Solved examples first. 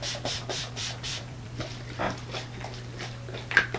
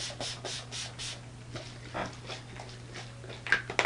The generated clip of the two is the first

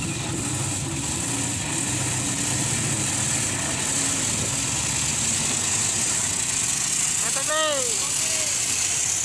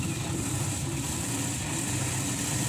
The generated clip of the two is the second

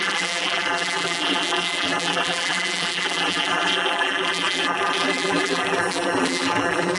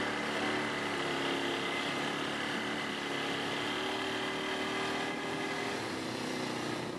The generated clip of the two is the first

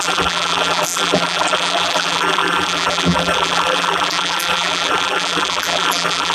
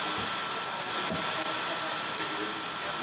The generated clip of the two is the first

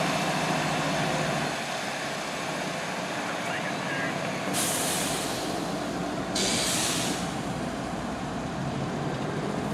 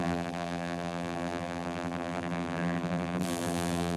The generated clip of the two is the second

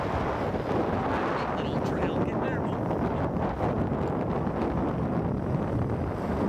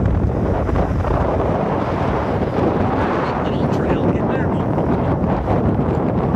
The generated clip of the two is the second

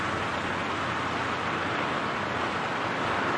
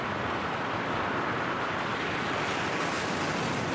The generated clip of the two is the second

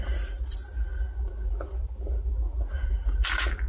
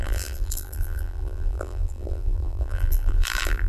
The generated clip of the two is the second